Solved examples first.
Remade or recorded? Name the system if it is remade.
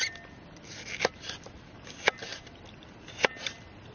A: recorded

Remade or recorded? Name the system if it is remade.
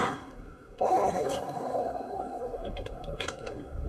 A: remade, codec, SNAC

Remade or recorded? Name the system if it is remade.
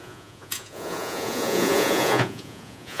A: remade, vocoder, Vocos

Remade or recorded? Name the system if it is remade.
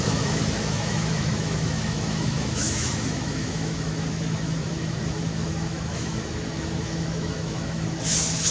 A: remade, autoencoder, DAC-VAE